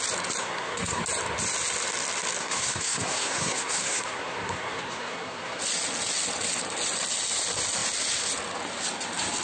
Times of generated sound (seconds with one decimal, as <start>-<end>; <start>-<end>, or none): 0.4-1.0; 2.4-5.6